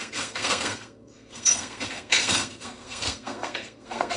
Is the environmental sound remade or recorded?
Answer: remade